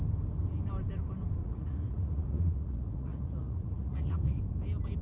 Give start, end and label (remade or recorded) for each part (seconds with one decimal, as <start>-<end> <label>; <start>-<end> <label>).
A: 0.0-1.4 recorded; 1.4-4.4 remade; 4.4-5.0 recorded